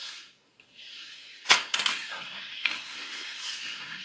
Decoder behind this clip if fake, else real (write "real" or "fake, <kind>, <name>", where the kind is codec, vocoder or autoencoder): fake, codec, SNAC